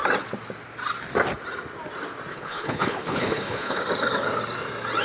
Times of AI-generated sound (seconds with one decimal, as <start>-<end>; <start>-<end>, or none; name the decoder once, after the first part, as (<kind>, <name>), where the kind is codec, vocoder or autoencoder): 2.3-3.8 (codec, HILCodec)